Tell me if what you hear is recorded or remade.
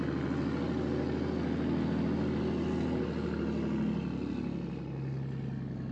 recorded